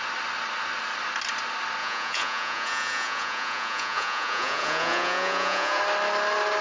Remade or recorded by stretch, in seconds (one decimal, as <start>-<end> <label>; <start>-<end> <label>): 0.0-1.8 recorded; 1.8-5.8 remade; 5.8-6.6 recorded